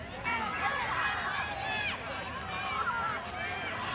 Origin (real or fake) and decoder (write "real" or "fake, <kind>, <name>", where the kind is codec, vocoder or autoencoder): real